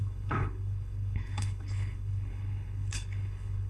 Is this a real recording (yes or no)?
no